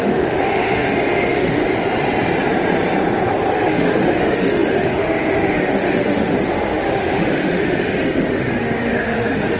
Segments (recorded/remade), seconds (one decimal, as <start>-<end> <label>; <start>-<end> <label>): 0.0-1.6 remade; 1.6-3.5 recorded; 3.5-9.6 remade